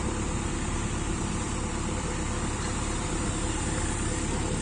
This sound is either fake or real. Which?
fake